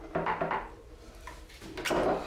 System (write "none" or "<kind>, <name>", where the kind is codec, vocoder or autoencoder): none